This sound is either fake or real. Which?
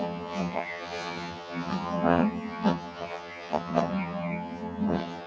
fake